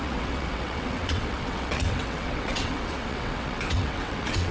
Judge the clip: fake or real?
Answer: fake